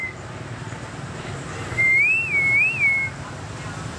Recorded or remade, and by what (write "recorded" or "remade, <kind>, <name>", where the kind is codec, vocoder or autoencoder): recorded